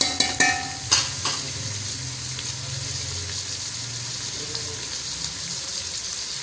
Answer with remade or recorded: recorded